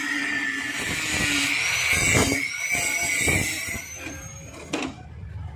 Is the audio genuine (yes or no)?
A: yes